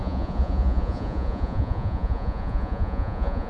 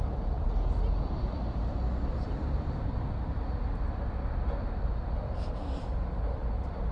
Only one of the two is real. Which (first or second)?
second